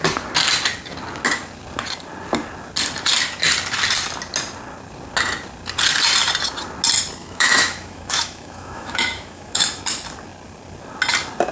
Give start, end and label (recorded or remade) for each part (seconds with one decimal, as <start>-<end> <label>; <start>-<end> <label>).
0.0-7.2 recorded; 7.2-9.8 remade; 9.8-11.5 recorded